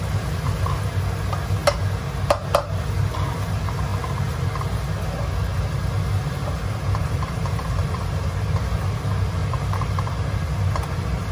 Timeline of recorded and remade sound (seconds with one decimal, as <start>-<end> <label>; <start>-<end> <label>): 0.0-7.0 recorded; 7.0-8.2 remade; 8.2-9.4 recorded; 9.4-10.4 remade; 10.4-11.3 recorded